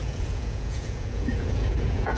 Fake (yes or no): yes